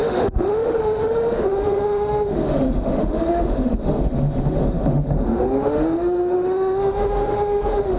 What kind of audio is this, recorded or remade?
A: remade